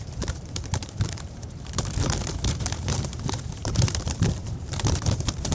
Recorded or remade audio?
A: remade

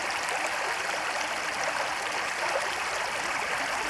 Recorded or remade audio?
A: recorded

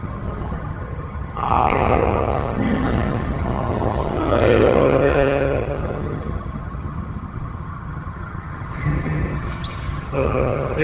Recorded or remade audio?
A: remade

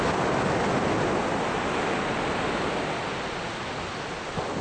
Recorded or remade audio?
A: recorded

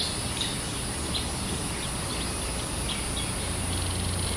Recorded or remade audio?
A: recorded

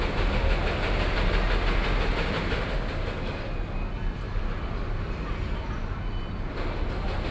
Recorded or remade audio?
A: recorded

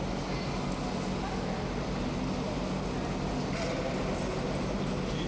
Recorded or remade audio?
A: recorded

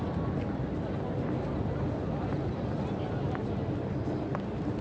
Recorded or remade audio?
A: recorded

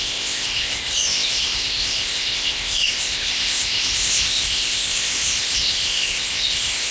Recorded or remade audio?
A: remade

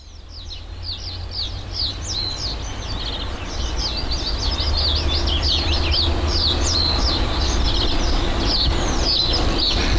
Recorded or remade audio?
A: recorded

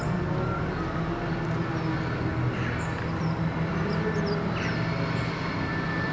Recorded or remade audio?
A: recorded